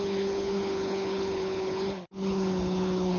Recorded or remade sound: remade